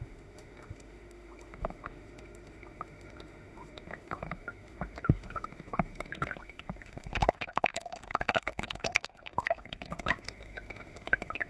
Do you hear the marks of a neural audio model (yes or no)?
yes